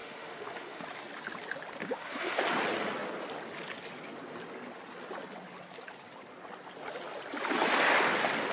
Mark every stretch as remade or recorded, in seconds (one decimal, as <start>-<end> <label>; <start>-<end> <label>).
0.0-0.8 remade; 0.8-1.8 recorded; 1.8-2.4 remade; 2.4-8.5 recorded